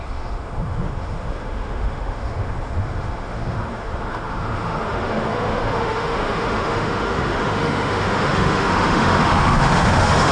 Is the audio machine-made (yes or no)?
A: yes